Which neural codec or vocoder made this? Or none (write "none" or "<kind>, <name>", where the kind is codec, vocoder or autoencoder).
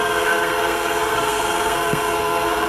codec, SNAC